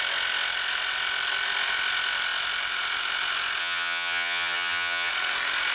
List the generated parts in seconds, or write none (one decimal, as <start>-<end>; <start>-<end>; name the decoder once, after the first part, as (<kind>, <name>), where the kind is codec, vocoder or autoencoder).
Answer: 3.6-5.1 (vocoder, HiFi-GAN)